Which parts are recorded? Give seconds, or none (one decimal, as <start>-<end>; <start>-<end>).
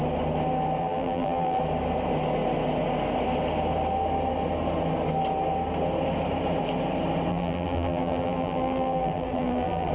0.0-0.8; 1.6-7.3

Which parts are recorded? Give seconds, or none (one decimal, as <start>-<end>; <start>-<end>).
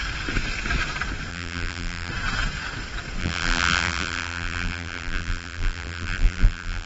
0.0-1.3; 2.1-3.2